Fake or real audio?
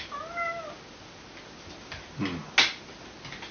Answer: real